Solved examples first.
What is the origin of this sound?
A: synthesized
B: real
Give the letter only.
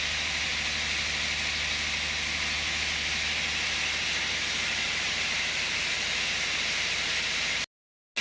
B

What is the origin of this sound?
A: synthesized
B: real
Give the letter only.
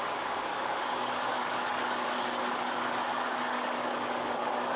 A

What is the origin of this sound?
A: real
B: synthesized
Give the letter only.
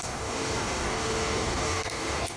B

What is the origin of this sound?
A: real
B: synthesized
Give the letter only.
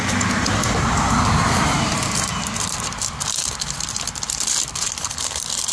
A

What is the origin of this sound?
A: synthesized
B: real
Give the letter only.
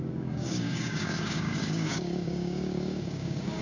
A